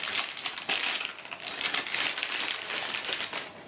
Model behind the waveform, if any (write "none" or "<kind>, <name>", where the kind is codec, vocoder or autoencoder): none